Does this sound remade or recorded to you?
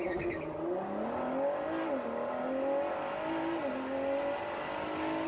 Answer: recorded